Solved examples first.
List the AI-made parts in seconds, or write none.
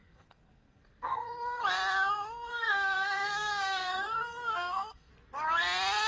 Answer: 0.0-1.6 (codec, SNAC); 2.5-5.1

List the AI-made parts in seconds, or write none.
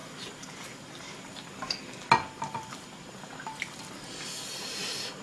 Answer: none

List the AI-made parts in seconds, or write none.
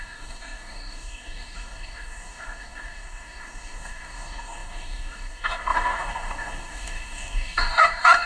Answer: 0.0-8.3 (codec, DAC)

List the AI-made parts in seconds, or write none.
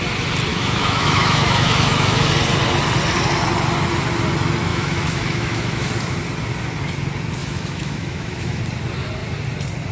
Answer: 0.5-2.3 (autoencoder, DAC-VAE); 4.7-5.9; 7.4-8.6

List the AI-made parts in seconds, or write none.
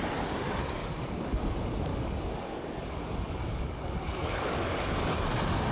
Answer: 0.8-1.4 (codec, DAC); 1.9-5.0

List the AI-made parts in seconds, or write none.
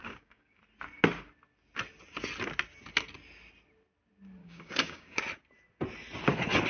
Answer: 0.0-0.6 (codec, DAC); 4.4-5.2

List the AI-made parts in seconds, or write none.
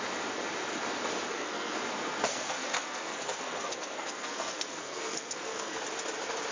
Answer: 1.3-1.8 (codec, SNAC); 2.3-5.8